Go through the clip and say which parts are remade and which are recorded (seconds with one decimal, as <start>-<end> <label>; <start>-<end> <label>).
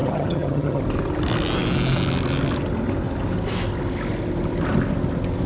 0.0-0.8 remade; 0.8-5.5 recorded